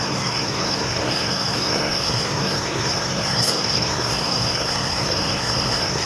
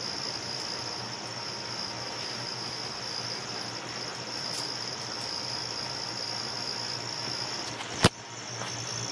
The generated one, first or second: first